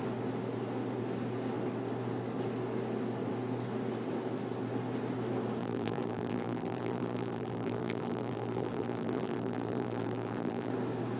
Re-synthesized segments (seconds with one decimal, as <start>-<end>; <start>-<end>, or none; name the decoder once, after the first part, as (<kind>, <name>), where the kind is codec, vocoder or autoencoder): 5.6-10.7 (vocoder, BigVGAN v2)